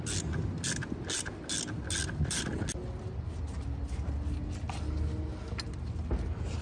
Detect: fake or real real